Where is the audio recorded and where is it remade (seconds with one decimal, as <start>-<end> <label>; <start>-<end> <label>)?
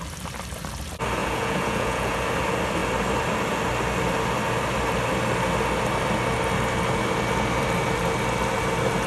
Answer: 0.0-1.2 recorded; 1.2-2.2 remade; 2.2-9.1 recorded